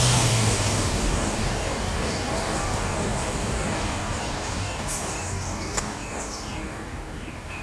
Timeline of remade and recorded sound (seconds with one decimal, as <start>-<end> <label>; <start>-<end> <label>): 0.0-7.6 remade